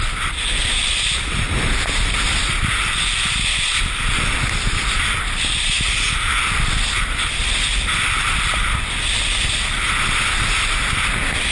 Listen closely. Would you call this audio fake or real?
real